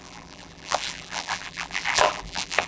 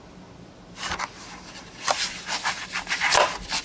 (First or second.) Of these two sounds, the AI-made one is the first